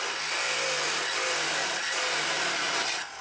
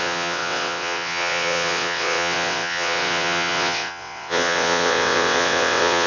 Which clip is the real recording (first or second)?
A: first